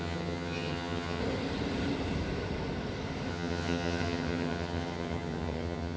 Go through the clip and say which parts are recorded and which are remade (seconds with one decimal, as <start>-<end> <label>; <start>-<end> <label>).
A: 0.0-1.2 remade; 1.2-3.3 recorded; 3.3-6.0 remade